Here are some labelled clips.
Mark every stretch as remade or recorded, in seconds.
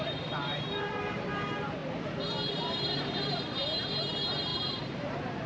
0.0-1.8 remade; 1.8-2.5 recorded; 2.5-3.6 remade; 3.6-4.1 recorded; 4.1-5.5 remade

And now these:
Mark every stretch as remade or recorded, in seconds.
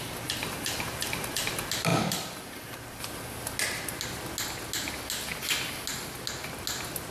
0.0-0.4 recorded; 0.4-1.3 remade; 1.3-1.9 recorded; 1.9-3.0 remade; 3.0-7.1 recorded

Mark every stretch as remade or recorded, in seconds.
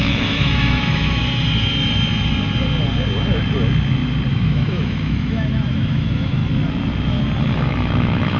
0.0-1.2 remade; 1.2-4.3 recorded; 4.3-6.4 remade; 6.4-7.4 recorded; 7.4-8.4 remade